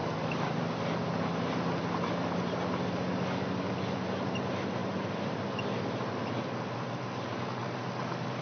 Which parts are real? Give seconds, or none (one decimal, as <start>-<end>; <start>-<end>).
0.6-8.4